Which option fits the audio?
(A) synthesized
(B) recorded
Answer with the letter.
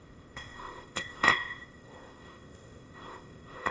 A